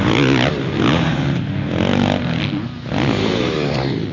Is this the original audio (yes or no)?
yes